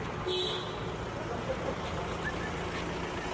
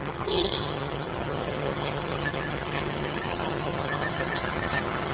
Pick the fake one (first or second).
second